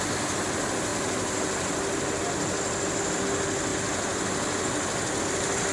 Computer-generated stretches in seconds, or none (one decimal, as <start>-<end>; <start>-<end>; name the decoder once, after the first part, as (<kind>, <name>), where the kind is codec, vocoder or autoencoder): none

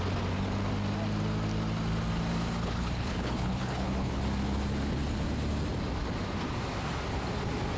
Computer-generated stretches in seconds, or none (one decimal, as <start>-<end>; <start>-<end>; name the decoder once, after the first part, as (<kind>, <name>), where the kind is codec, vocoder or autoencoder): 2.6-4.2 (codec, HILCodec)

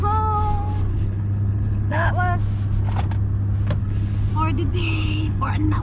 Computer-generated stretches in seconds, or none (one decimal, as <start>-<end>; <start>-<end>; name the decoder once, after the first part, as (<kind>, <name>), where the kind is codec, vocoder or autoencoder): 0.9-2.1 (codec, HILCodec); 3.8-4.3; 4.7-5.8

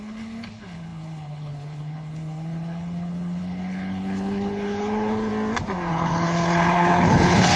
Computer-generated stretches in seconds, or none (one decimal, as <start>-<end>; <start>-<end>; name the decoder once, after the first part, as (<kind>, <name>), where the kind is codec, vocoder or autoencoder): 0.0-5.3 (codec, HILCodec); 5.9-7.6

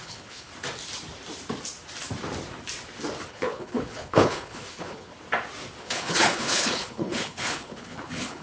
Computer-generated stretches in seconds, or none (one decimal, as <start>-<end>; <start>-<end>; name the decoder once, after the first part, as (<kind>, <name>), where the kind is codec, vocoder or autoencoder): 0.0-0.5 (codec, HILCodec); 3.3-5.1; 5.8-8.4

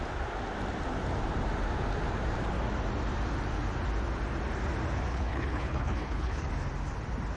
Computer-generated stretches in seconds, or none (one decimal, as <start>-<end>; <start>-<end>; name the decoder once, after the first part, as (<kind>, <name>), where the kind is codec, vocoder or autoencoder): 5.1-6.5 (codec, HILCodec)

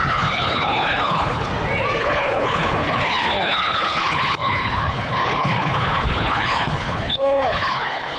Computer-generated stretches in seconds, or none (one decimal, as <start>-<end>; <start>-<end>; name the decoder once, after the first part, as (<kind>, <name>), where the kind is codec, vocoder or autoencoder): 0.0-1.5 (codec, HILCodec); 2.0-8.2